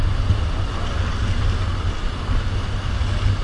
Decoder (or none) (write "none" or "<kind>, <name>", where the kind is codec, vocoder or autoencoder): none